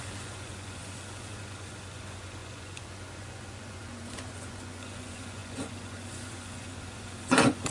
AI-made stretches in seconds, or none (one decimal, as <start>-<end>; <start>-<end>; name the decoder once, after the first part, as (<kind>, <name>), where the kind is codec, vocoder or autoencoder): 0.0-7.7 (vocoder, Vocos)